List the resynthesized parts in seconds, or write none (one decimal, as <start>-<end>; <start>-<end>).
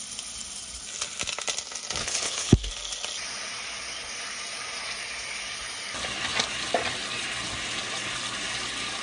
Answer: 2.0-2.7